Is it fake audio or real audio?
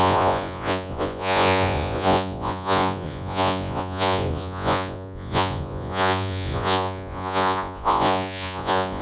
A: fake